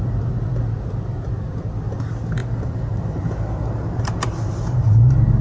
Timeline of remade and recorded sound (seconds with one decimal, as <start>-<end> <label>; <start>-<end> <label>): 0.0-2.4 recorded; 2.4-4.9 remade; 4.9-5.4 recorded